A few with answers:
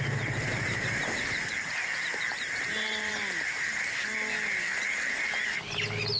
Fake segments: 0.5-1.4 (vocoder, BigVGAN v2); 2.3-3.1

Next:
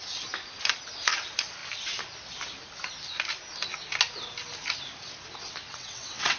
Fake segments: 5.7-6.4 (vocoder, WaveNeXt)

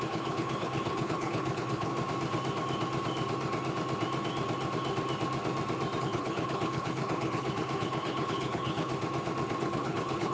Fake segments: 0.0-1.9 (codec, HILCodec); 6.0-8.9; 9.6-10.3

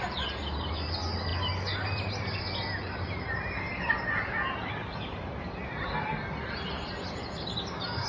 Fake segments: none

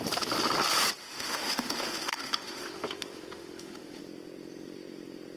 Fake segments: 1.0-4.0 (autoencoder, DAC-VAE)